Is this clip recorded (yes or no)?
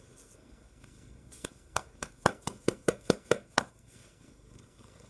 no